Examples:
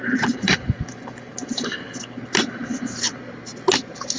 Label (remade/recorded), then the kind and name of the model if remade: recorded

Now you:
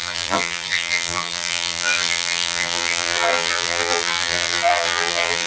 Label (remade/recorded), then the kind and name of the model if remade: remade, vocoder, BigVGAN v2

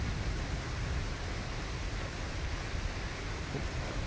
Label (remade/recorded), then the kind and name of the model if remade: recorded